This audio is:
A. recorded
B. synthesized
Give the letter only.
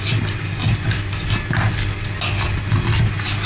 A